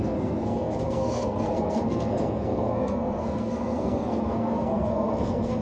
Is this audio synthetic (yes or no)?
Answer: yes